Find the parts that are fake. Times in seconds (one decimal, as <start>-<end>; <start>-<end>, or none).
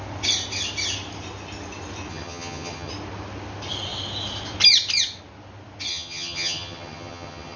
2.1-2.9; 5.9-7.6